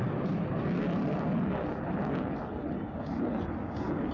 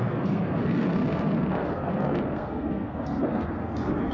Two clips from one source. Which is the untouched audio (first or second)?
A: first